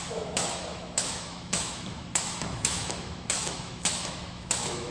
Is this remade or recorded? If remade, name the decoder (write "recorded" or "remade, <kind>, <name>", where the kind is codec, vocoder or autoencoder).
remade, autoencoder, DAC-VAE